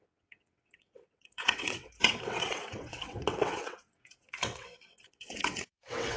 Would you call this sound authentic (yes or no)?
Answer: no